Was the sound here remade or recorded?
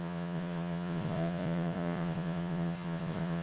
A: remade